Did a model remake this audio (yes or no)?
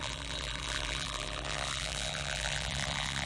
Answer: yes